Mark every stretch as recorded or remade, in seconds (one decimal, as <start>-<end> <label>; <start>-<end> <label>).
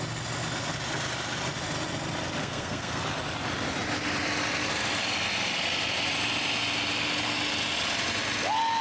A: 0.0-2.4 recorded; 2.4-3.0 remade; 3.0-8.8 recorded